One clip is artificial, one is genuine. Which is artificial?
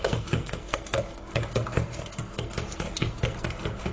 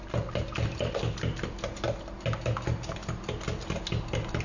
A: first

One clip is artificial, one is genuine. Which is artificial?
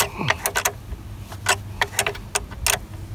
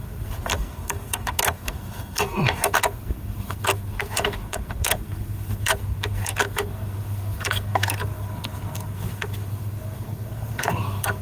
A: second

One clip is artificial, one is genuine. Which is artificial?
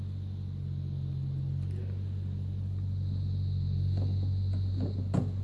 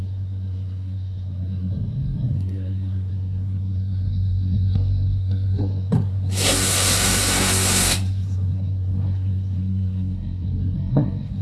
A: second